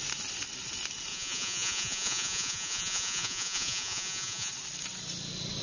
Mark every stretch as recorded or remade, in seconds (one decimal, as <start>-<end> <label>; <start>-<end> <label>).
0.0-1.1 recorded; 1.1-4.5 remade; 4.5-5.6 recorded